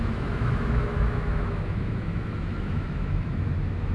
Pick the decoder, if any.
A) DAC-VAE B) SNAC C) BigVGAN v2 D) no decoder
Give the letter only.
A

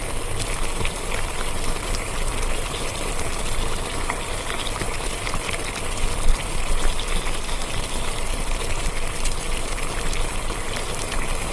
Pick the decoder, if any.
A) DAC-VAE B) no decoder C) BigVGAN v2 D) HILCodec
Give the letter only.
B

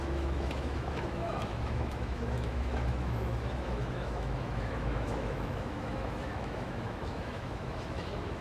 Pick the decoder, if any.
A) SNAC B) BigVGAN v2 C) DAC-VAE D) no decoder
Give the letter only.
C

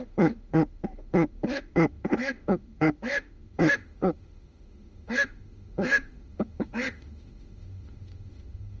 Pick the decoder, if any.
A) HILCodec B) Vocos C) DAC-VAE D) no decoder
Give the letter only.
C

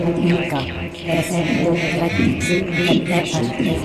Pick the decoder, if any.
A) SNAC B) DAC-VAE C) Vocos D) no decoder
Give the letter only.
D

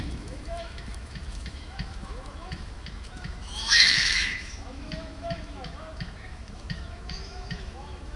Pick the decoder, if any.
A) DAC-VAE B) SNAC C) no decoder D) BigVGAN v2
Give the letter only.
A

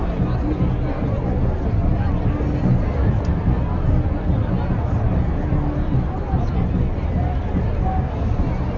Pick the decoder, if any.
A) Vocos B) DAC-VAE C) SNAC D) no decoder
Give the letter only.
D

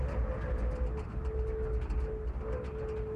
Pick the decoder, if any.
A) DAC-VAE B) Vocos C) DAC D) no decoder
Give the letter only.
D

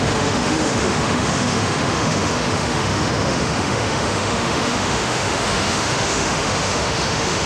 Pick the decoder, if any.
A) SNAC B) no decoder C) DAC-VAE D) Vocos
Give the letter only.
C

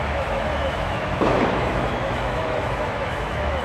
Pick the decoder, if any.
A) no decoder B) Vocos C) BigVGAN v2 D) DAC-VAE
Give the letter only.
D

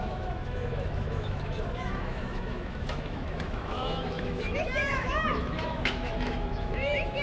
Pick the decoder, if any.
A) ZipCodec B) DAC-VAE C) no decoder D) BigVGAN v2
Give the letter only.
B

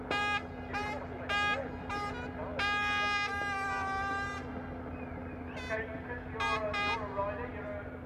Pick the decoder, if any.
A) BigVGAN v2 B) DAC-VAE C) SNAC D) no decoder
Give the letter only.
D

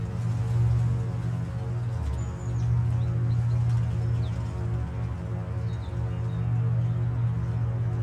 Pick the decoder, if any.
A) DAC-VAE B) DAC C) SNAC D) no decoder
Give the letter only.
D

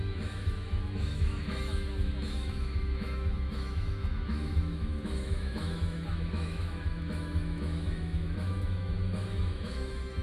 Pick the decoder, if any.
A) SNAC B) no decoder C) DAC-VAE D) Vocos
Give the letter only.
C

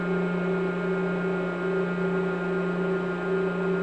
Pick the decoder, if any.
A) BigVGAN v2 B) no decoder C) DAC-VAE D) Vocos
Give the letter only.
B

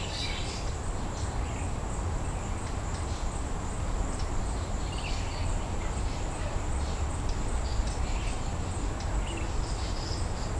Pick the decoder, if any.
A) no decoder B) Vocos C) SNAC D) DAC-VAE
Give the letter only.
A